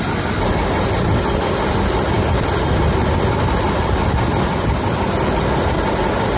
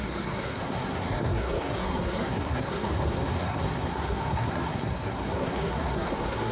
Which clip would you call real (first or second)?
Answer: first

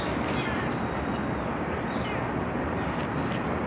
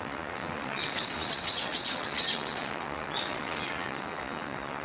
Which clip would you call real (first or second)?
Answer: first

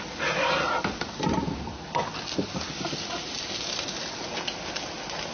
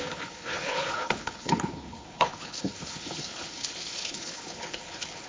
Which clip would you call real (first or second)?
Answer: first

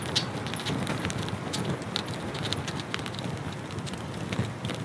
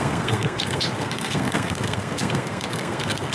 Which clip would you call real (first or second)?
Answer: first